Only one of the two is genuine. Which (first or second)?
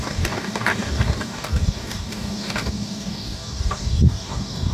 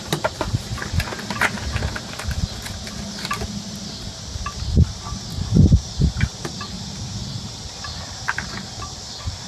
second